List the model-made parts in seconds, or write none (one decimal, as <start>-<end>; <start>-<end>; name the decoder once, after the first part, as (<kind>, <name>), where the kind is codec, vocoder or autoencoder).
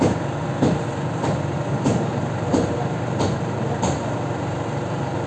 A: 2.1-5.3 (vocoder, BigVGAN v2)